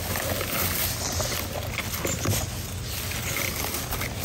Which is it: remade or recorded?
recorded